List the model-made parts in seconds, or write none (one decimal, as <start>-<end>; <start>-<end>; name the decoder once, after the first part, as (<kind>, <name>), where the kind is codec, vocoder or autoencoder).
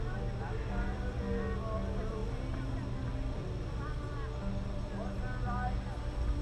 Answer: none